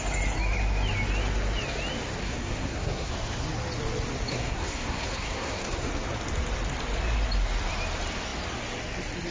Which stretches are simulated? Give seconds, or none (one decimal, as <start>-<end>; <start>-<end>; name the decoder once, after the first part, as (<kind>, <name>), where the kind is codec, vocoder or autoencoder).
2.2-3.1 (codec, SNAC); 4.3-5.9

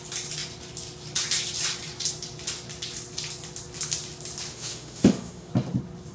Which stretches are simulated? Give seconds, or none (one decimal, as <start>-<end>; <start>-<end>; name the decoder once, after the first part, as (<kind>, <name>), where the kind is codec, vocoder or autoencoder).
4.5-5.5 (autoencoder, DAC-VAE)

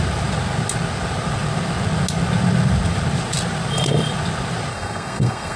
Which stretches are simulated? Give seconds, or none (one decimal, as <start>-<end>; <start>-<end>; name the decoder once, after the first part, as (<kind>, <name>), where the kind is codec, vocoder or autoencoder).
4.7-5.6 (codec, SNAC)